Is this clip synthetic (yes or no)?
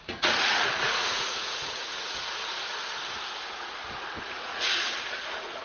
yes